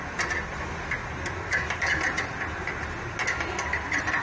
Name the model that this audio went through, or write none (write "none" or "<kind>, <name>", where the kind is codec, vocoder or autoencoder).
none